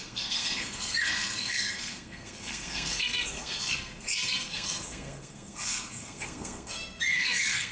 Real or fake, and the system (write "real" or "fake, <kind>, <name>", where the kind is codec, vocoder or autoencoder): fake, codec, SNAC